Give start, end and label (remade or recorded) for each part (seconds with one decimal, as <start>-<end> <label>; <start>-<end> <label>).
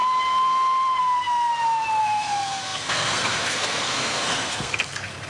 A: 0.0-1.0 recorded; 1.0-1.5 remade; 1.5-2.0 recorded; 2.0-5.3 remade